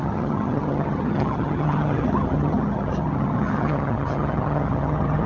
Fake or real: fake